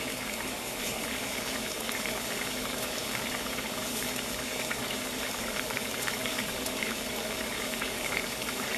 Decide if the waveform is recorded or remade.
remade